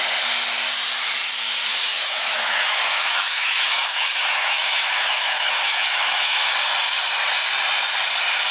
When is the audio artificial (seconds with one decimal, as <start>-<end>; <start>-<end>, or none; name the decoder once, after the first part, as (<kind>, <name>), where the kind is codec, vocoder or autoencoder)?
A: 1.7-6.5 (autoencoder, DAC-VAE)